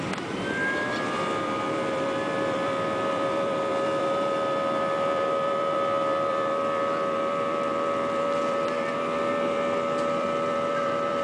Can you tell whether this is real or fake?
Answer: fake